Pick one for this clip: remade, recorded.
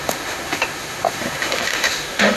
remade